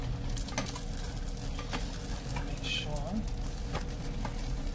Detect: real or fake real